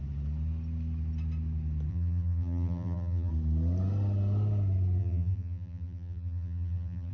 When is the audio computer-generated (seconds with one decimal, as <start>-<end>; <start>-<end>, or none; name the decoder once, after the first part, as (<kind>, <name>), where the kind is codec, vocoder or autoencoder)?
1.9-3.3 (vocoder, BigVGAN v2); 5.0-7.1